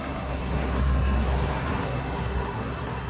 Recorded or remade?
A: remade